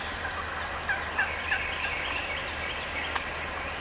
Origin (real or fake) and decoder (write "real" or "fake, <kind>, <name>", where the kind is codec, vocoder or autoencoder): real